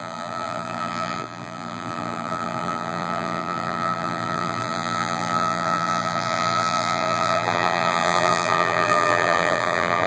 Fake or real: fake